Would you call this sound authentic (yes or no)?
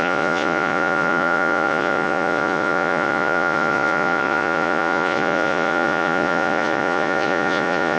no